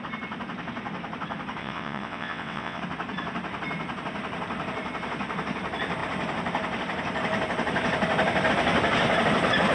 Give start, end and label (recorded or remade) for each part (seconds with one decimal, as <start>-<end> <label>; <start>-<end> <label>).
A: 0.0-1.6 recorded; 1.6-2.8 remade; 2.8-9.7 recorded